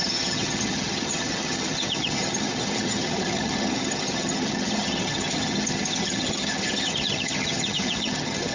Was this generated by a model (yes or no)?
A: yes